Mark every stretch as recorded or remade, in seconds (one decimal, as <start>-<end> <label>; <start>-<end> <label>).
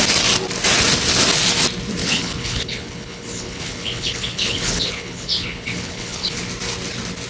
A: 0.0-2.0 recorded; 2.0-6.4 remade; 6.4-7.3 recorded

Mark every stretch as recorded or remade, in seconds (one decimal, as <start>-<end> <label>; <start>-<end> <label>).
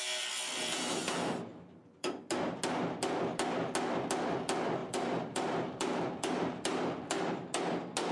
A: 0.0-1.5 recorded; 1.5-2.2 remade; 2.2-4.8 recorded; 4.8-6.6 remade; 6.6-8.1 recorded